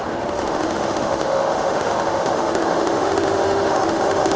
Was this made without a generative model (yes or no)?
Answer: no